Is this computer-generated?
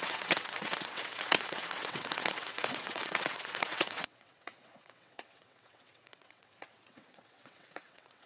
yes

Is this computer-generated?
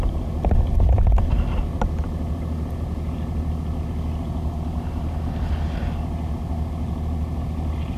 no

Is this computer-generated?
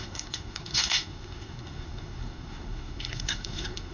yes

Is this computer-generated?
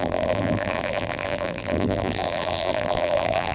yes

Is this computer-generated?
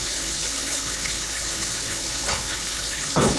yes